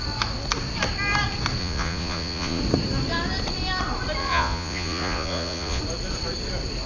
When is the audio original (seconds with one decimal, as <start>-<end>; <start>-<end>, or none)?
0.0-1.6; 2.6-4.2; 5.8-6.9